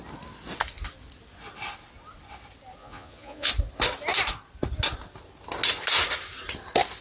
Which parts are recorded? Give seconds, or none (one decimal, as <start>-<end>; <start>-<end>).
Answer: 0.0-2.8; 3.5-7.0